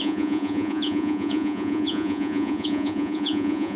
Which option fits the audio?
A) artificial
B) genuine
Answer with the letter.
A